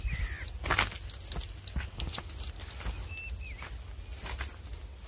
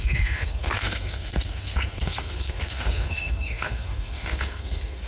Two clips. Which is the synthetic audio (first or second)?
second